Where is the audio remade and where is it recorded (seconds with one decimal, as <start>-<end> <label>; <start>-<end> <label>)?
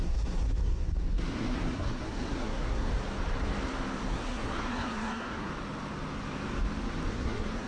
0.0-2.9 remade; 2.9-4.1 recorded; 4.1-5.5 remade; 5.5-7.1 recorded; 7.1-7.7 remade